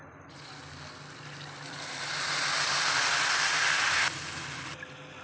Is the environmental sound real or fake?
real